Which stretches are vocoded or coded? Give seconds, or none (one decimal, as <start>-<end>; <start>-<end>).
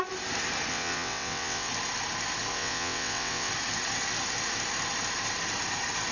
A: 0.7-1.7; 2.5-3.5